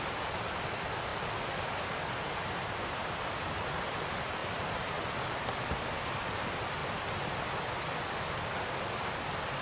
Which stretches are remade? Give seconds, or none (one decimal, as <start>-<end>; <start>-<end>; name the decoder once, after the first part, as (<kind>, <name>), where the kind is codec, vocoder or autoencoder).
none